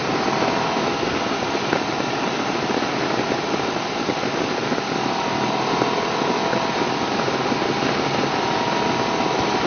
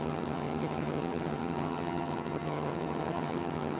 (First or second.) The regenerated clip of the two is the second